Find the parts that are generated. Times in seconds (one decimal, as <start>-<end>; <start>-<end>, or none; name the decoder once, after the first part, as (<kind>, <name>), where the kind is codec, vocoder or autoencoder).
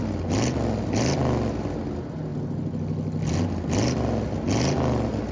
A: none